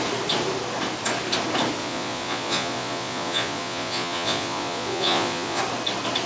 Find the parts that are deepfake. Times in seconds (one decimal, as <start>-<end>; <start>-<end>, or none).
1.8-5.6